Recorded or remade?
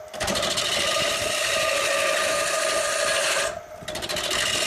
recorded